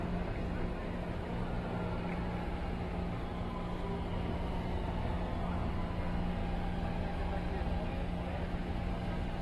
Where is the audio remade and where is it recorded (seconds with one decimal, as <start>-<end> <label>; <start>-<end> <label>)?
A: 0.0-9.4 recorded